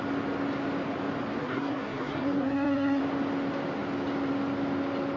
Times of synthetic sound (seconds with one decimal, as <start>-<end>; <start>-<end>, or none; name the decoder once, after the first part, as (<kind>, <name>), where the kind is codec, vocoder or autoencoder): 1.4-3.0 (codec, SNAC)